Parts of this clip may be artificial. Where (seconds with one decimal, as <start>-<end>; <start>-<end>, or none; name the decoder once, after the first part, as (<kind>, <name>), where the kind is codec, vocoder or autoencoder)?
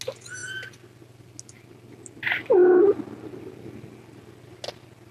none